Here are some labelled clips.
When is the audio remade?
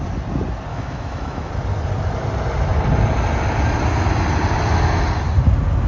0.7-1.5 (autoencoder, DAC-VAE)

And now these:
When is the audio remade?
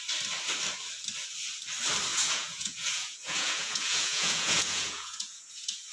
2.1-5.9 (vocoder, Vocos)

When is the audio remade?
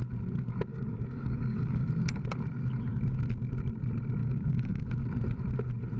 0.7-1.9 (codec, DAC); 4.2-4.8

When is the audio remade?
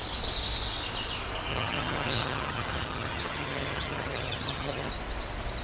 1.5-4.9 (vocoder, HiFi-GAN)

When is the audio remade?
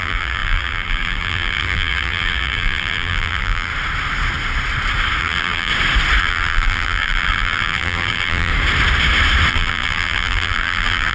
0.0-3.7 (vocoder, BigVGAN v2); 5.2-5.7; 6.2-8.5; 9.5-11.1